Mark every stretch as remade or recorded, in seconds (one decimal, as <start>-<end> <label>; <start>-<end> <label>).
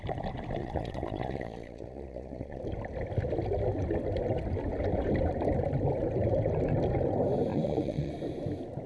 0.0-0.6 recorded; 0.6-2.6 remade; 2.6-7.5 recorded; 7.5-8.1 remade; 8.1-8.9 recorded